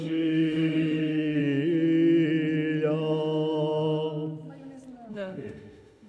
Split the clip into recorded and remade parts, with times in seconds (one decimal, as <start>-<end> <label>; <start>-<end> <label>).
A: 0.0-1.4 remade; 1.4-5.1 recorded; 5.1-6.1 remade